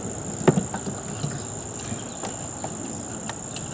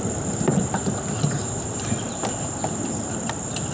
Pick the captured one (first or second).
first